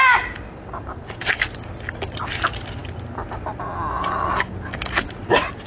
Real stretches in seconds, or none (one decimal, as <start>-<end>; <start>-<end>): 0.0-5.7